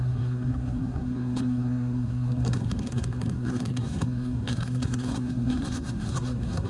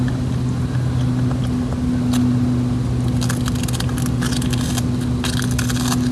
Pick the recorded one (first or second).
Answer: second